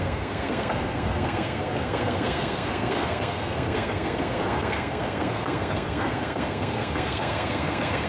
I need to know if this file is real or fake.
fake